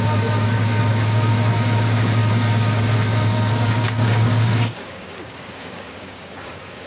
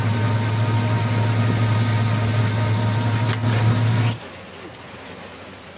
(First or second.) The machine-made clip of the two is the first